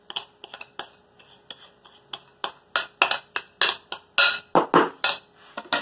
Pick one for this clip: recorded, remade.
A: recorded